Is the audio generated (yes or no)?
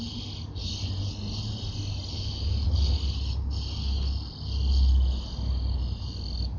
no